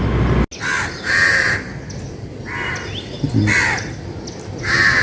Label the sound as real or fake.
real